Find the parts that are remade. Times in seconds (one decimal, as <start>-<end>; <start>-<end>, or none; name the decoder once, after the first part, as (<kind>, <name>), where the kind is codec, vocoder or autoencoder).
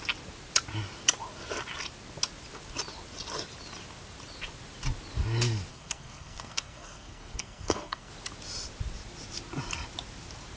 5.7-8.1 (codec, SNAC)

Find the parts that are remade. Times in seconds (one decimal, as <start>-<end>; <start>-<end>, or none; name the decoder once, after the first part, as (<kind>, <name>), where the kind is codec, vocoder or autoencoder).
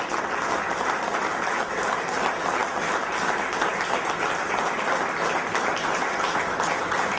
none